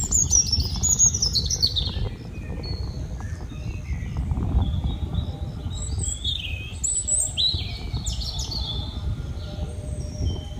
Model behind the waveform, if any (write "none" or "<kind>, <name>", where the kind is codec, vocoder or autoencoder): none